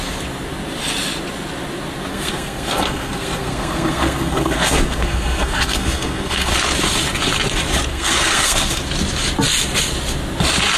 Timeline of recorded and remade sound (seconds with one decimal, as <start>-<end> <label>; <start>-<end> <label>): 0.0-2.1 recorded; 2.1-6.5 remade; 6.5-7.9 recorded; 7.9-8.8 remade; 8.8-10.8 recorded